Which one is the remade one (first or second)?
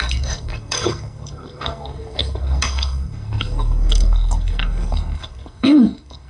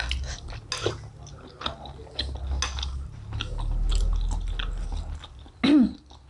first